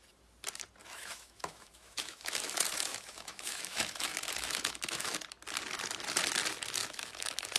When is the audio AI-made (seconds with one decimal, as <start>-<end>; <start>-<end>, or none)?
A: 0.8-5.2; 6.8-7.6